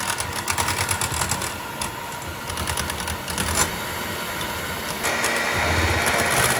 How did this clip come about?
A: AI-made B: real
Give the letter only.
B